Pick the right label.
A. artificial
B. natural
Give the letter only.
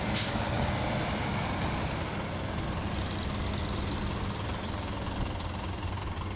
B